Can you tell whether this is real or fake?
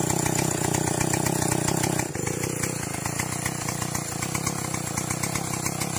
real